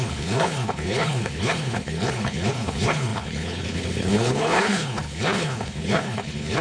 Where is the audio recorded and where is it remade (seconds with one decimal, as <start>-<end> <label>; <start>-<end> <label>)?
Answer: 0.0-6.6 remade